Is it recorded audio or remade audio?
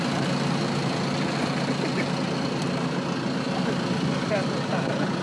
recorded